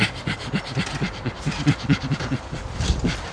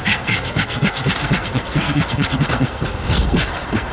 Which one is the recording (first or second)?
first